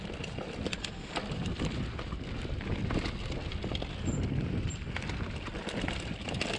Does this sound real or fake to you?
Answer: real